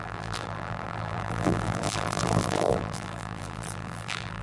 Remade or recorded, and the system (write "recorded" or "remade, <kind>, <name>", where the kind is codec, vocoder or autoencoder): remade, vocoder, BigVGAN v2